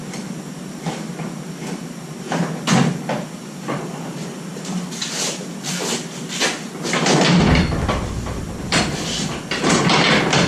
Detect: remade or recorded recorded